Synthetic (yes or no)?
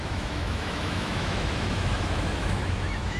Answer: yes